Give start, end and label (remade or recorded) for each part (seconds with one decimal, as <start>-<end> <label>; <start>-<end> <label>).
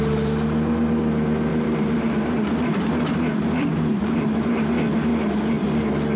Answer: 0.0-1.5 recorded; 1.5-2.4 remade; 2.4-3.7 recorded; 3.7-4.6 remade; 4.6-6.2 recorded